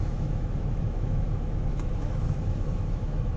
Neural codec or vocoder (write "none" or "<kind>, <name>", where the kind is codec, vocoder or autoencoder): autoencoder, DAC-VAE